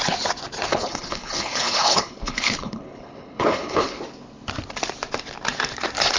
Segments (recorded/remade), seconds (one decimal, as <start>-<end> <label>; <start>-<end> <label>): 0.0-0.7 recorded; 0.7-4.0 remade; 4.0-6.2 recorded